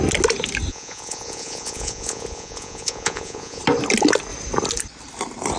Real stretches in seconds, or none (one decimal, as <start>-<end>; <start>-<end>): 0.0-0.7; 3.6-5.6